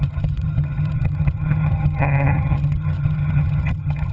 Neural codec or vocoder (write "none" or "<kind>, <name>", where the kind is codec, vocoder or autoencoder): vocoder, HiFi-GAN